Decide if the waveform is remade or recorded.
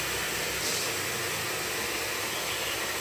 recorded